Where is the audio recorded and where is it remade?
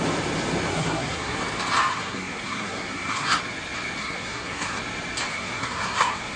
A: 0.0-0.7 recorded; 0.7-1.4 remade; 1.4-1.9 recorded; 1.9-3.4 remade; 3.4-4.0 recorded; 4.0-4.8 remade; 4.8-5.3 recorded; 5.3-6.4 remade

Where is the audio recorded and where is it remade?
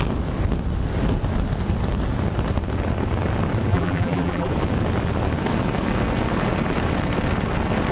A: 0.0-3.7 recorded; 3.7-4.5 remade; 4.5-7.9 recorded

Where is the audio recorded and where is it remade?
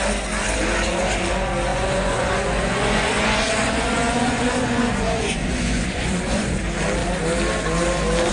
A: 0.0-1.7 recorded; 1.7-6.6 remade; 6.6-8.3 recorded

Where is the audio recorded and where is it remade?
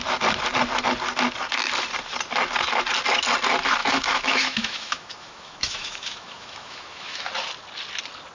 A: 0.0-3.8 recorded; 3.8-7.3 remade; 7.3-8.3 recorded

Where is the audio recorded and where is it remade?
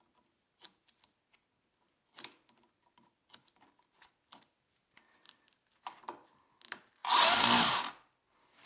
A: 0.0-8.7 recorded